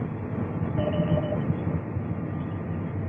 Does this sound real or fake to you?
real